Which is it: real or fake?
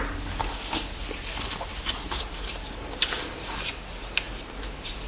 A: real